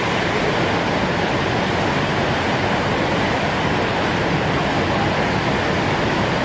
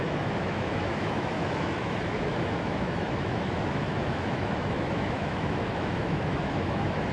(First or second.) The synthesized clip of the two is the second